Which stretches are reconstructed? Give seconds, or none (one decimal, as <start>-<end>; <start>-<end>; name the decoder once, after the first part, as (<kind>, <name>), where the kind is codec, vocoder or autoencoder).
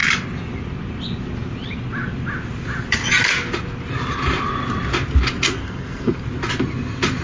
5.6-6.2 (codec, SNAC)